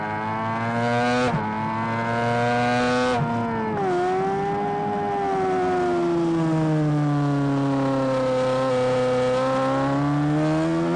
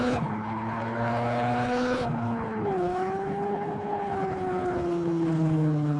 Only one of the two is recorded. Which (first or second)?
first